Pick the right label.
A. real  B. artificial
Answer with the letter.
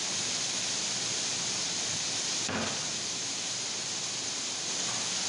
B